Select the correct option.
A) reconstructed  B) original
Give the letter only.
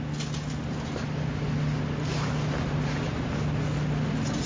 B